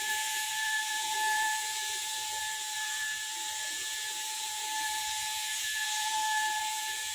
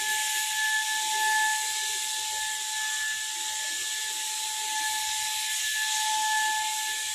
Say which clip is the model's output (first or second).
first